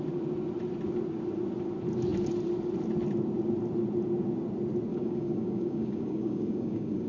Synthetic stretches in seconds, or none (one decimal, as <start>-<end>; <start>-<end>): 4.9-7.1